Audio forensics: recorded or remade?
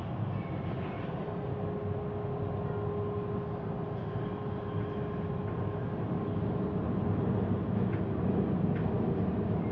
recorded